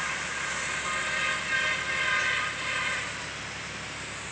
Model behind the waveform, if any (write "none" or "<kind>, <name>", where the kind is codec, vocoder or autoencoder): none